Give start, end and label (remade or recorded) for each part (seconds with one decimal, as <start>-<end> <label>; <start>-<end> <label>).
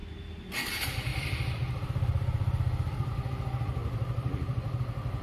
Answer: 0.0-1.1 recorded; 1.1-3.1 remade; 3.1-3.8 recorded; 3.8-4.8 remade; 4.8-5.2 recorded